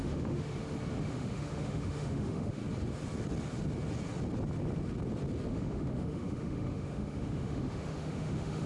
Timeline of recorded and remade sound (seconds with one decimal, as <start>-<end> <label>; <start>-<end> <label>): 0.0-0.5 remade; 0.5-1.0 recorded; 1.0-2.6 remade; 2.6-5.5 recorded; 5.5-8.7 remade